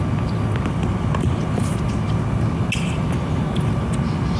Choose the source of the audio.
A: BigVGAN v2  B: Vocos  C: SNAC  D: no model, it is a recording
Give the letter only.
D